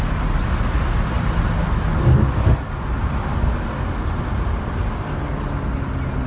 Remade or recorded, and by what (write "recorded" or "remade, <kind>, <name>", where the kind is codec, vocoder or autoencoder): recorded